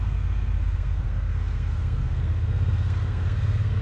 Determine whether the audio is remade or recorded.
remade